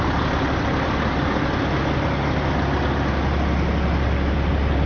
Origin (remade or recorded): recorded